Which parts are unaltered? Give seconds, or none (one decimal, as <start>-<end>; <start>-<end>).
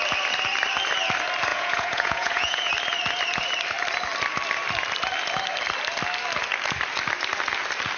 0.0-1.5; 2.7-8.0